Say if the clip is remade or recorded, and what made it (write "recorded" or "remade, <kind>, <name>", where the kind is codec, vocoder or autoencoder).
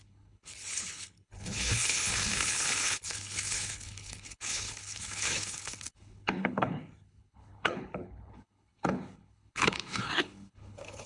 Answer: remade, codec, HILCodec